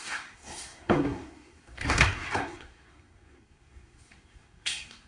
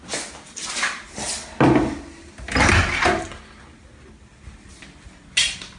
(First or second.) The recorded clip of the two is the second